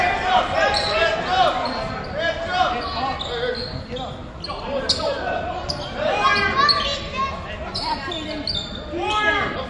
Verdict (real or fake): real